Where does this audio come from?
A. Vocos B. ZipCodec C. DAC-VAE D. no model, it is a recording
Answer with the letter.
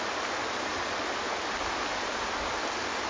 D